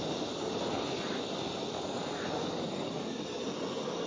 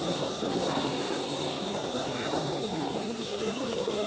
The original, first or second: first